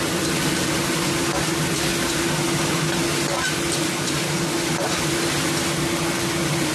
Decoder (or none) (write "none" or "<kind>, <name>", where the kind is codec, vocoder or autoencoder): none